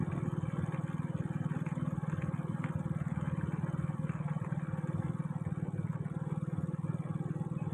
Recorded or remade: recorded